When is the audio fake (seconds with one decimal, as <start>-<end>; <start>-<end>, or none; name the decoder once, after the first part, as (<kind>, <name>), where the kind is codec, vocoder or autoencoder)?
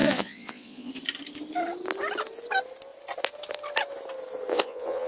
0.0-0.9 (vocoder, Vocos); 4.5-5.1